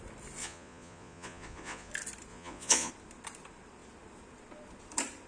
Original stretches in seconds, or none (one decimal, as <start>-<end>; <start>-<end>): 0.0-0.4; 1.9-2.3; 2.9-5.3